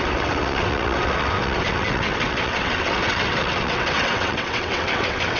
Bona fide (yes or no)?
no